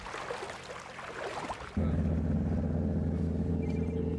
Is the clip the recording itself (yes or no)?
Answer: yes